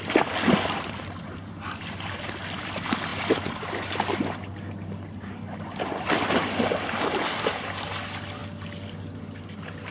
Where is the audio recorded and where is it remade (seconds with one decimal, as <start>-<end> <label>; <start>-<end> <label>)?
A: 0.0-8.4 remade; 8.4-9.2 recorded; 9.2-9.9 remade